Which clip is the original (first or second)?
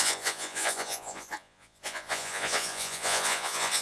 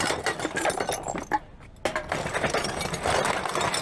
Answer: second